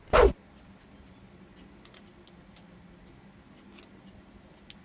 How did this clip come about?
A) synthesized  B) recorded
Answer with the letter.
B